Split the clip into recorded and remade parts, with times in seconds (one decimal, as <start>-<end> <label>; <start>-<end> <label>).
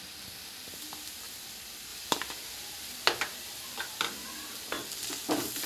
0.0-5.7 remade